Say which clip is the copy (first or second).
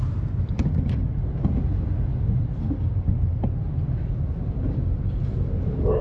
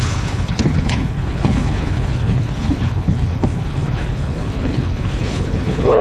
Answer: second